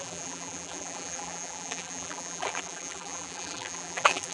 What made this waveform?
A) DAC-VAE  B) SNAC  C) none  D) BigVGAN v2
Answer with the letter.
D